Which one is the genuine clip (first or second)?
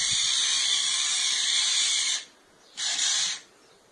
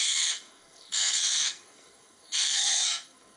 first